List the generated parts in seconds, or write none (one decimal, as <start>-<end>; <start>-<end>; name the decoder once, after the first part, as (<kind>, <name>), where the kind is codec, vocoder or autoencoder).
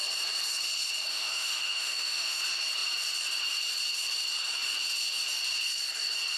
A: 1.1-2.4 (autoencoder, DAC-VAE)